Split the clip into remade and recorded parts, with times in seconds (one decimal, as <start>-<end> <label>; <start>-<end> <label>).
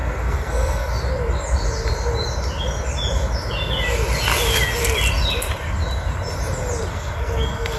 0.0-0.9 remade; 0.9-6.9 recorded; 6.9-7.8 remade